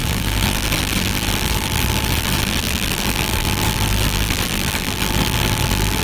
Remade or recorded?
remade